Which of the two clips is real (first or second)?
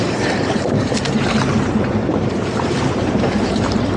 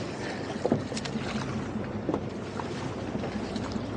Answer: second